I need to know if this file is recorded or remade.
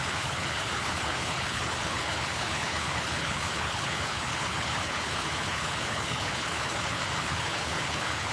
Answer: remade